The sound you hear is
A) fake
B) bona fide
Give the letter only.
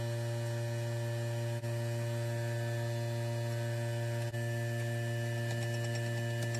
B